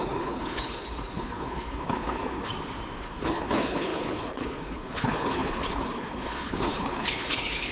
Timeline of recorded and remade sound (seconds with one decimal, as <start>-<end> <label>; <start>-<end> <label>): 0.0-2.5 remade; 2.5-3.0 recorded; 3.0-7.7 remade